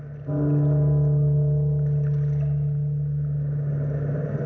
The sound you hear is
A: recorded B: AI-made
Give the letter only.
A